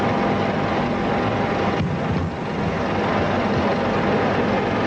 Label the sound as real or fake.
real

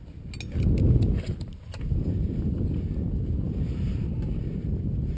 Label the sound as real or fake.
real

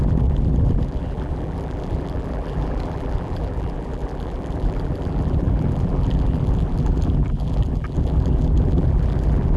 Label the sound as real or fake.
fake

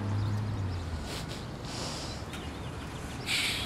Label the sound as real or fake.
real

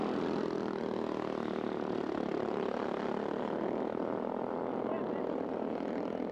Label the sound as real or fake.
real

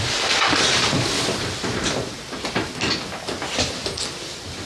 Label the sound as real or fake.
real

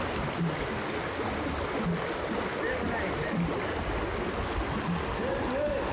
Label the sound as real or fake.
real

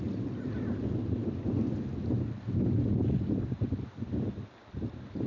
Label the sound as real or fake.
real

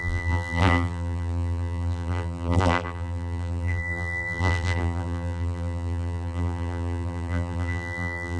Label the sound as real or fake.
fake